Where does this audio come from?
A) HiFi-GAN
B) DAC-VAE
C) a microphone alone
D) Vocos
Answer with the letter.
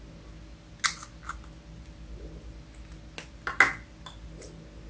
C